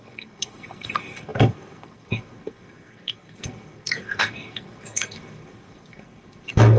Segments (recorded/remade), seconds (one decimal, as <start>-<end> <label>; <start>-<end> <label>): 0.0-6.8 remade